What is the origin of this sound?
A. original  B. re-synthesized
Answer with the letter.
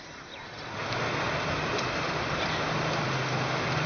A